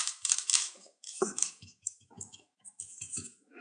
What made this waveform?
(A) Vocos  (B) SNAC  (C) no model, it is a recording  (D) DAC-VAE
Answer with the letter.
D